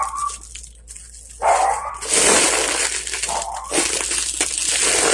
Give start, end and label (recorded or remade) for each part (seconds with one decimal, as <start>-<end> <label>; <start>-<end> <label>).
0.0-1.4 recorded; 1.4-1.9 remade; 1.9-5.1 recorded